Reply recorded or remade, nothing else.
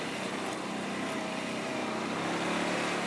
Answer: recorded